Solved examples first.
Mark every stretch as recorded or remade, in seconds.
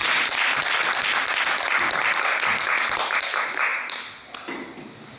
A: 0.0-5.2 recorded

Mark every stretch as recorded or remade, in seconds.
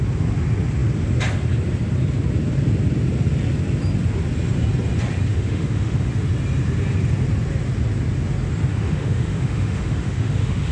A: 0.0-5.3 recorded; 5.3-6.1 remade; 6.1-8.7 recorded; 8.7-10.7 remade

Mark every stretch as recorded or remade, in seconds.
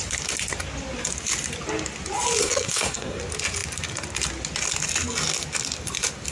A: 0.0-2.4 recorded; 2.4-3.2 remade; 3.2-6.3 recorded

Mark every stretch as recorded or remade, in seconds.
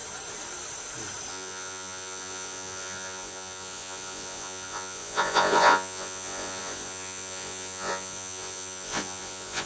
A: 0.0-1.3 recorded; 1.3-9.7 remade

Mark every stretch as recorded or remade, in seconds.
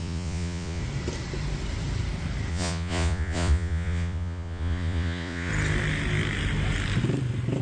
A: 0.0-0.8 remade; 0.8-2.5 recorded; 2.5-5.5 remade; 5.5-7.6 recorded